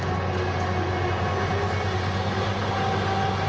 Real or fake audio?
real